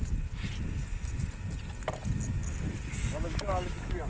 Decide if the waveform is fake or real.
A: real